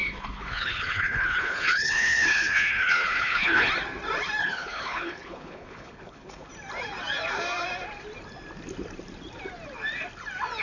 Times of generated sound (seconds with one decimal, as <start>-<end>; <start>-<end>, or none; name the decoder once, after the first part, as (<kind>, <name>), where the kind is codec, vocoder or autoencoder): 0.0-3.7 (codec, HILCodec); 4.4-6.5

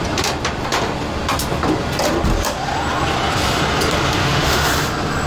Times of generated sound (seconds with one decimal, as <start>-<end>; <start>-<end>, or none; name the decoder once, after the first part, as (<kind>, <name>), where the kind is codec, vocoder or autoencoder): 4.2-4.7 (autoencoder, DAC-VAE)

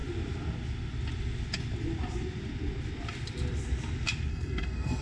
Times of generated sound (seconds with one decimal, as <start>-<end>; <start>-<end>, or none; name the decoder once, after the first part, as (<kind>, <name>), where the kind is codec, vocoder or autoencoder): 4.3-5.0 (codec, SNAC)

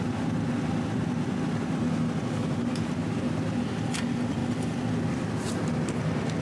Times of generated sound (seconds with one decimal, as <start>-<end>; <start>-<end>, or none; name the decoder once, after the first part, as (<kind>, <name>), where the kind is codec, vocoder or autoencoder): none